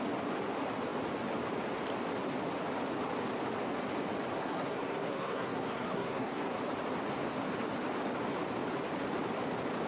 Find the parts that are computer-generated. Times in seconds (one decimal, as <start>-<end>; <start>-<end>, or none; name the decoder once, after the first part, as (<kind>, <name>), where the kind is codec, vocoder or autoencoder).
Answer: 4.3-6.6 (codec, SNAC)